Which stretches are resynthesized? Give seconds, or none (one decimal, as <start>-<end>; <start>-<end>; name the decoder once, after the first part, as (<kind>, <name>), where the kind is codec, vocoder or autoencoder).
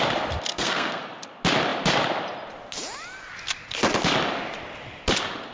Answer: 0.5-1.0 (codec, SNAC)